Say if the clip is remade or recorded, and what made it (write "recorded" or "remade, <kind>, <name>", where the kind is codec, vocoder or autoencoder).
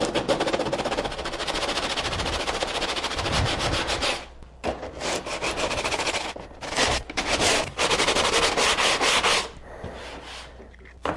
recorded